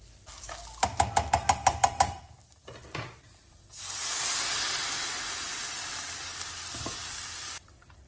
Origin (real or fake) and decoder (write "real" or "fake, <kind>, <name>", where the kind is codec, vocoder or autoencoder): real